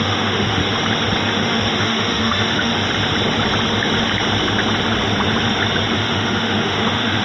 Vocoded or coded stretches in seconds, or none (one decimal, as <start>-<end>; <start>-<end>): 0.0-0.6; 1.2-2.7; 5.9-7.2